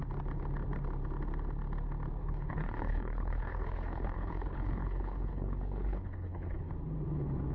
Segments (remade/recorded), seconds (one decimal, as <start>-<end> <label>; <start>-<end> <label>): 0.0-2.2 recorded; 2.2-6.7 remade; 6.7-7.5 recorded